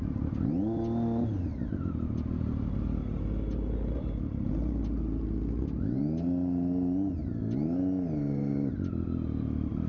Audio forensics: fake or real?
real